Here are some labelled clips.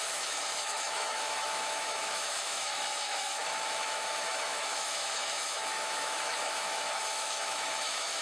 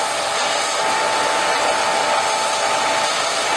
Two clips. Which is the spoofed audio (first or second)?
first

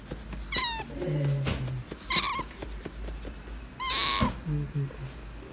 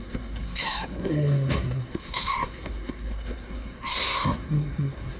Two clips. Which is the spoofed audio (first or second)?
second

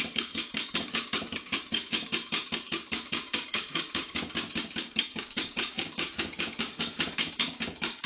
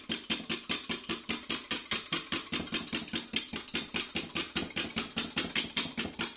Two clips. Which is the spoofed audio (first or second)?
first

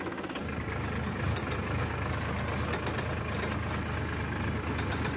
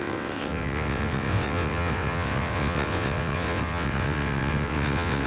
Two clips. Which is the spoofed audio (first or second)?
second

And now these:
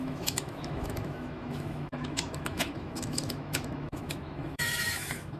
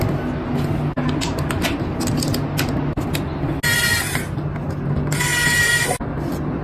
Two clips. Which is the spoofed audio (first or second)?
first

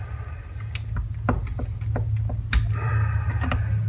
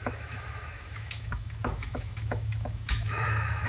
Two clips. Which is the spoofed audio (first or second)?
second